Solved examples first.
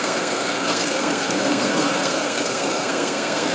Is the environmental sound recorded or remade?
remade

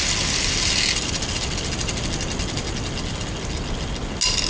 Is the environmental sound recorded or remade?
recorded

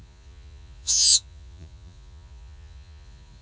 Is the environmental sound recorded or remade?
remade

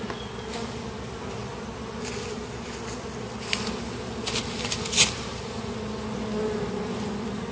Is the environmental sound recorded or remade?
recorded